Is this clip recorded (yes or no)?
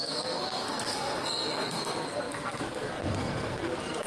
no